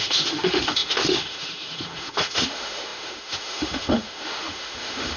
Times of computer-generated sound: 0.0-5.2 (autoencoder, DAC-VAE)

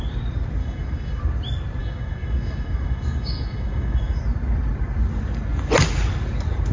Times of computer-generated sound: 0.6-1.2 (autoencoder, DAC-VAE); 1.8-4.2